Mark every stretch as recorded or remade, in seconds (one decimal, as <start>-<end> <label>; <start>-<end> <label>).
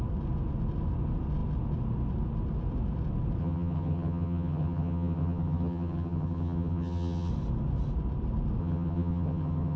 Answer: 0.0-3.4 recorded; 3.4-7.3 remade; 7.3-8.6 recorded; 8.6-9.8 remade